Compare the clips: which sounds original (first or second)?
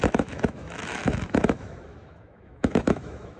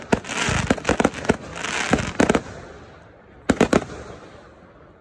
second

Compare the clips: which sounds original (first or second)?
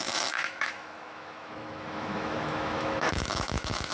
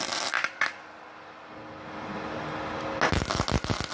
second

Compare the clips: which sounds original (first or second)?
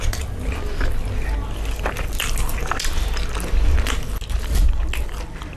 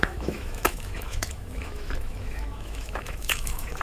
first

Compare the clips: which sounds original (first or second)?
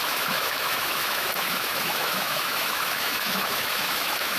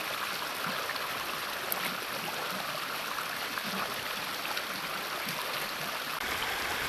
second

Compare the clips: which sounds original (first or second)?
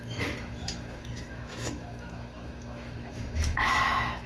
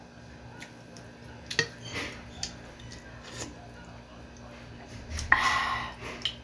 second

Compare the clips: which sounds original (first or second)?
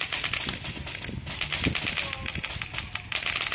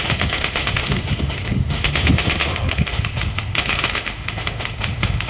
first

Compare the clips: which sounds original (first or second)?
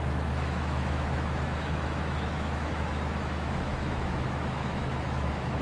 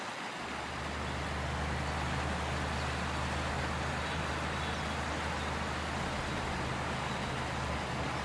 second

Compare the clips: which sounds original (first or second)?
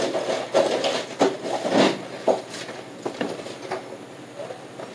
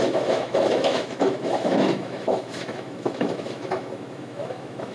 first